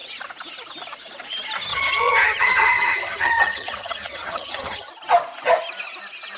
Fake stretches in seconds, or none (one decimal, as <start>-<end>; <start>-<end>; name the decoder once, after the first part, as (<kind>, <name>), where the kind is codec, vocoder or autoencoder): 1.7-4.9 (vocoder, HiFi-GAN)